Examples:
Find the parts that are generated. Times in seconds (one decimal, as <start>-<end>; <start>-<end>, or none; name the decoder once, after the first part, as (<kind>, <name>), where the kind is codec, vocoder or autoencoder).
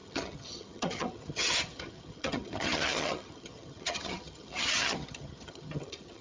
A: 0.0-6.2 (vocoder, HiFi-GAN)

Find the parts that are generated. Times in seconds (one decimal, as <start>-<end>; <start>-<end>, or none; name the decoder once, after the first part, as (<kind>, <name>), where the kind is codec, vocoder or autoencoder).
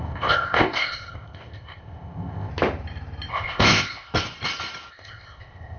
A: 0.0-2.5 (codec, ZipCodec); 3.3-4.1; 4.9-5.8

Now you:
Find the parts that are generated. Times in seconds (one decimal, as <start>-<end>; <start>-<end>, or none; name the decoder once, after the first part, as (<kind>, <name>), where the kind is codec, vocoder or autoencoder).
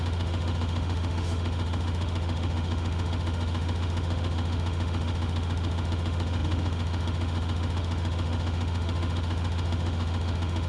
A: 0.0-10.7 (autoencoder, DAC-VAE)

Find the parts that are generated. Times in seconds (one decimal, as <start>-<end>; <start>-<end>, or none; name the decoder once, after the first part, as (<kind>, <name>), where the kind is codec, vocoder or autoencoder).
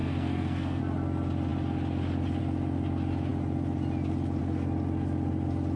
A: 0.0-0.8 (codec, SNAC)